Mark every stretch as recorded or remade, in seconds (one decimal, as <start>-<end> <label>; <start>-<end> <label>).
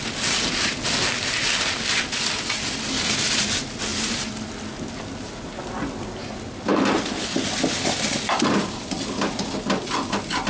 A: 0.0-10.5 recorded